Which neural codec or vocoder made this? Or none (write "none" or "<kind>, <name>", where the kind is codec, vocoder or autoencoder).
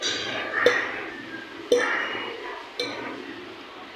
none